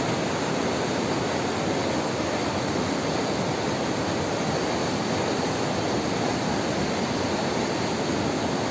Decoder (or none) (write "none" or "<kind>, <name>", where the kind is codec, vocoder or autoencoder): none